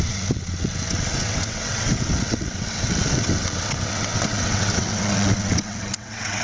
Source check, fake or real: fake